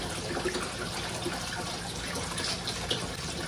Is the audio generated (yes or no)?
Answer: no